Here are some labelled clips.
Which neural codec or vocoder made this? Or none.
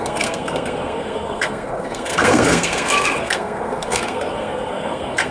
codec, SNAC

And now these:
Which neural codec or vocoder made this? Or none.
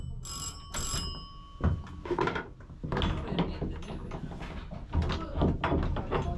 none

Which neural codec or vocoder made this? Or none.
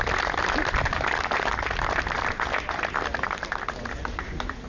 none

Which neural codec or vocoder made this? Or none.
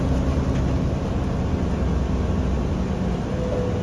none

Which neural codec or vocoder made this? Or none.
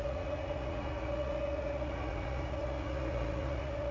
vocoder, Vocos